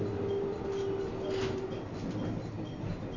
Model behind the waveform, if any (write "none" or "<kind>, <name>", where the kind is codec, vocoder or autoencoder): none